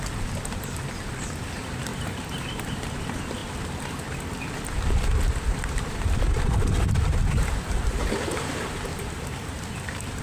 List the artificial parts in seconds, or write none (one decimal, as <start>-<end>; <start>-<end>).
1.9-3.0; 8.9-10.2